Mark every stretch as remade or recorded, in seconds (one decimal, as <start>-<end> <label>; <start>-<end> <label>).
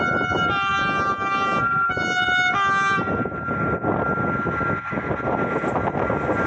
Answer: 0.0-6.5 recorded